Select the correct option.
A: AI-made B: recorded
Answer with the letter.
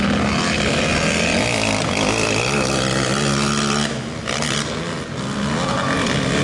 B